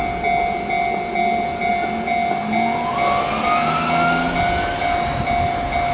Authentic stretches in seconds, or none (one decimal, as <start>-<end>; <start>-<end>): 0.0-5.9